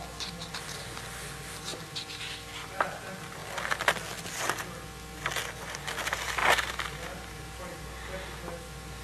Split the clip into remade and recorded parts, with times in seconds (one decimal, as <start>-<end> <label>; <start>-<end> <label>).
0.0-6.4 recorded; 6.4-7.8 remade; 7.8-9.0 recorded